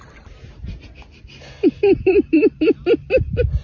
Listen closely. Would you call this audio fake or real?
real